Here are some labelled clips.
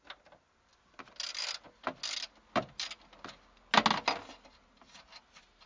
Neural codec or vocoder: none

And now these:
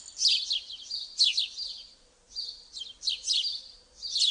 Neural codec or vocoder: none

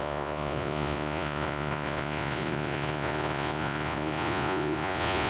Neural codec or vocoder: vocoder, Vocos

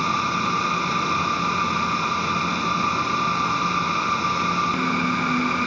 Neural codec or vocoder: none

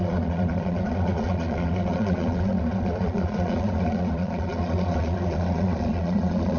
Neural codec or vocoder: vocoder, Vocos